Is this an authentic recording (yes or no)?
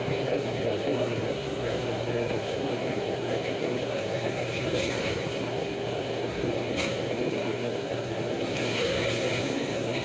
no